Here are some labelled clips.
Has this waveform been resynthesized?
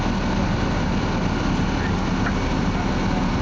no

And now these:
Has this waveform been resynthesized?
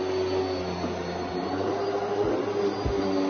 no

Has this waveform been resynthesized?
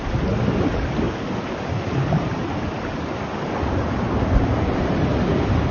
no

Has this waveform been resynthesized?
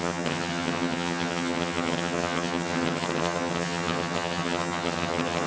yes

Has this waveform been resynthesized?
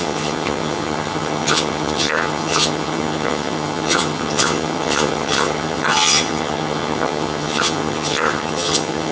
yes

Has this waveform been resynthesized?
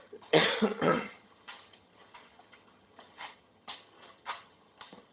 yes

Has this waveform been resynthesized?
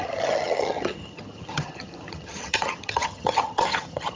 yes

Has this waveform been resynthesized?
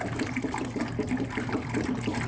no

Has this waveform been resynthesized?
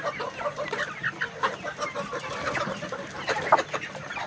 no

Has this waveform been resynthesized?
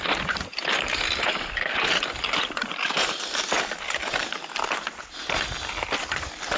no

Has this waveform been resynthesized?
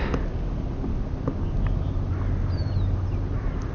no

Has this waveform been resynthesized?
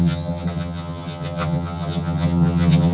yes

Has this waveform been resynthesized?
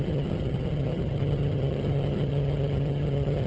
yes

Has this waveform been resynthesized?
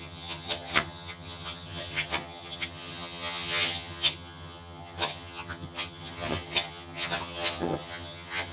yes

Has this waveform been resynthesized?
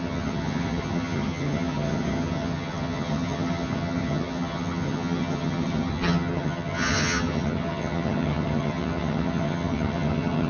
yes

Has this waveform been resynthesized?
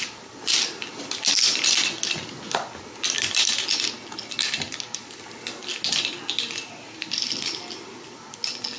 no